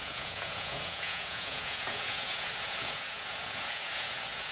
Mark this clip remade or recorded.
remade